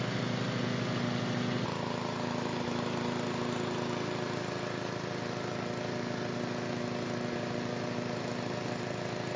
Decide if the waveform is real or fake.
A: real